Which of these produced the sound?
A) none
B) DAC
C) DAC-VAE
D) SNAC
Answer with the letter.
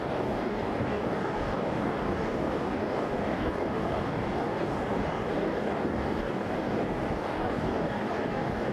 B